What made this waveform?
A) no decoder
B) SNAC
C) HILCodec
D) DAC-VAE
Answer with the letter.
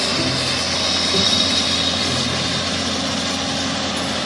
A